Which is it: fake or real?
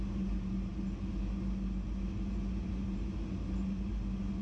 real